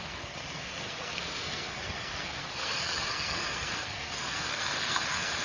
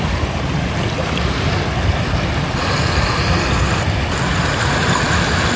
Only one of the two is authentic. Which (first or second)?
second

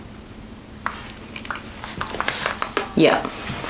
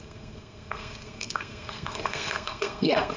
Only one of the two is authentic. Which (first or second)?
first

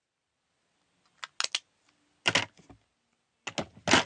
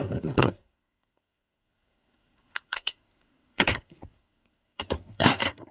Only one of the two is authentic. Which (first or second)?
first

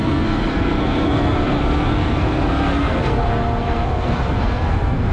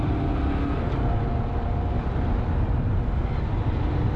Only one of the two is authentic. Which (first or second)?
second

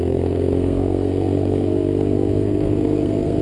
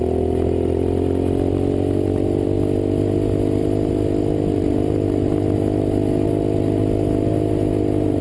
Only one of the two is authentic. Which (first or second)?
second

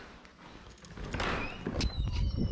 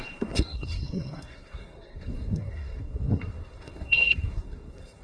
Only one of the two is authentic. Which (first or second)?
first